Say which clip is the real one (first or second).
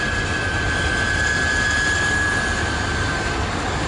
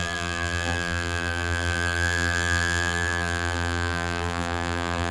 first